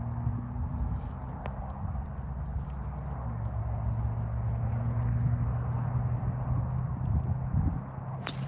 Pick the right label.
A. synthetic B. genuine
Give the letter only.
B